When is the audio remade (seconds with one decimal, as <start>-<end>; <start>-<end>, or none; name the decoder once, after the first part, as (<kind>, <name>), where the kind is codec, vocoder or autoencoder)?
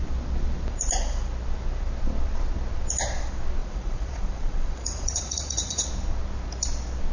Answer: 3.6-5.9 (vocoder, Vocos)